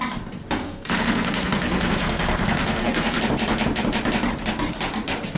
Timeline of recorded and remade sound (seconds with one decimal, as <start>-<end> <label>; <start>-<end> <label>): 0.0-0.6 recorded; 0.6-3.2 remade; 3.2-5.4 recorded